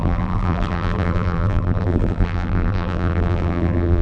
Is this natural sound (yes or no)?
no